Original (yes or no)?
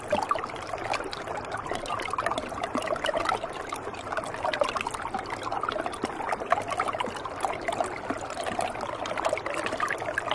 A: yes